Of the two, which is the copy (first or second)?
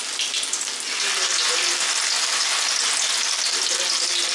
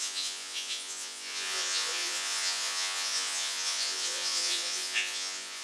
second